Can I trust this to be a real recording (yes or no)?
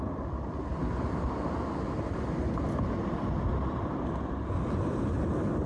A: yes